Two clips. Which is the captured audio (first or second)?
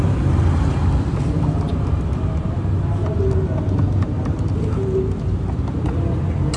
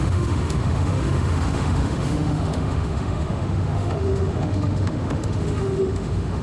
first